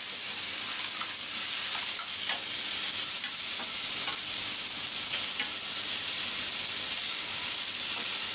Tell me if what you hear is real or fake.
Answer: real